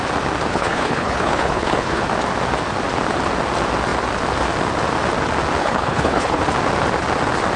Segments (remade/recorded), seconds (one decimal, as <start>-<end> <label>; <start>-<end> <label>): 0.0-0.5 recorded; 0.5-2.0 remade; 2.0-5.6 recorded; 5.6-6.4 remade; 6.4-7.6 recorded